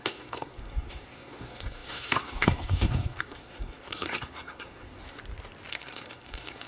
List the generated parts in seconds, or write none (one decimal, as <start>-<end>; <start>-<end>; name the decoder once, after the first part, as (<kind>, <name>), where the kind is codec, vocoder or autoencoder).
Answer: 0.0-5.2 (codec, SNAC); 5.7-6.7